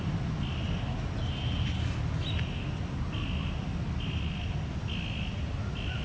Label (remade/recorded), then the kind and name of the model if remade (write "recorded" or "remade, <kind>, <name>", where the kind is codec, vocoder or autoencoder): recorded